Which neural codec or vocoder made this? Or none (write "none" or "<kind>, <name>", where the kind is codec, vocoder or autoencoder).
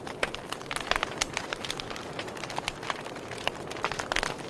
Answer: none